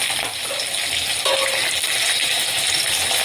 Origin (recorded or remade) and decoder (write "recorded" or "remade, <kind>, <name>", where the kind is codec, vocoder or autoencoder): recorded